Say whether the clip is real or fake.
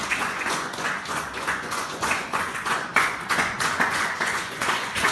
fake